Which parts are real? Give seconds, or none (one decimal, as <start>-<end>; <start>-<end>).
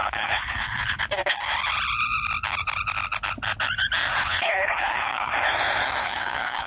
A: 1.0-4.2; 5.3-6.0